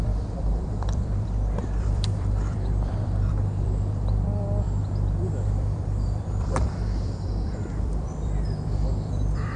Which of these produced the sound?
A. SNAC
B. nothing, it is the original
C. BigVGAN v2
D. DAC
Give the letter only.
C